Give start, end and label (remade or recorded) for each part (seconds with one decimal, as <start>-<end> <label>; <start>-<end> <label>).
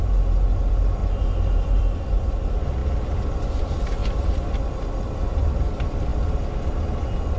0.0-1.0 remade; 1.0-1.7 recorded; 1.7-2.8 remade; 2.8-3.6 recorded; 3.6-7.4 remade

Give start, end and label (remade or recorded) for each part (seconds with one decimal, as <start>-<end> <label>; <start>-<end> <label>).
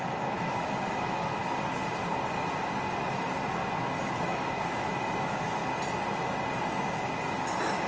0.0-1.4 remade; 1.4-4.0 recorded; 4.0-5.6 remade; 5.6-7.2 recorded; 7.2-7.9 remade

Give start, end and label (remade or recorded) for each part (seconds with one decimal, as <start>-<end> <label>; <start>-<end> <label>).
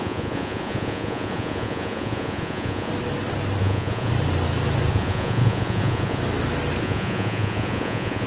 0.0-2.9 remade; 2.9-3.6 recorded; 3.6-4.1 remade; 4.1-4.9 recorded; 4.9-6.2 remade; 6.2-6.8 recorded; 6.8-8.3 remade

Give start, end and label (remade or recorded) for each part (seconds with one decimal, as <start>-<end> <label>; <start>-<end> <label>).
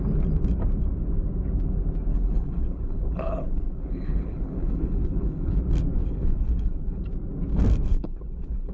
0.0-2.1 recorded; 2.1-5.6 remade; 5.6-6.0 recorded; 6.0-7.0 remade; 7.0-7.9 recorded; 7.9-8.7 remade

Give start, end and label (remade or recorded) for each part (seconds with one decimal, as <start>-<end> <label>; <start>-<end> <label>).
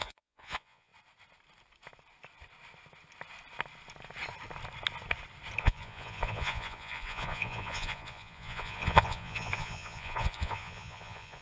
0.0-0.9 remade; 0.9-5.6 recorded; 5.6-11.4 remade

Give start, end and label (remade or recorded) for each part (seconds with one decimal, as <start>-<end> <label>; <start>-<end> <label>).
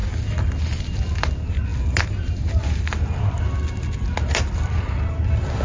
0.0-5.6 recorded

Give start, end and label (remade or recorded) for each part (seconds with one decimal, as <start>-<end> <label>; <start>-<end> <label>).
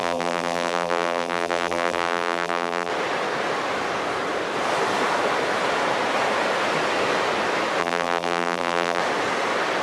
0.0-2.9 remade; 2.9-7.8 recorded; 7.8-9.0 remade; 9.0-9.8 recorded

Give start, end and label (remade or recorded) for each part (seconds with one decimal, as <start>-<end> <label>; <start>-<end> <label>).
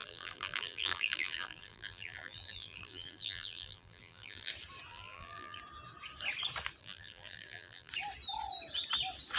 0.0-4.5 remade; 4.5-4.9 recorded; 4.9-5.6 remade; 5.6-6.8 recorded; 6.8-7.9 remade; 7.9-9.4 recorded